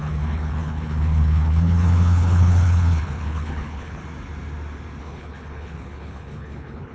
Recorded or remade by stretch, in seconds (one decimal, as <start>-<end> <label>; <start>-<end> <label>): 0.0-4.0 remade; 4.0-5.0 recorded; 5.0-6.9 remade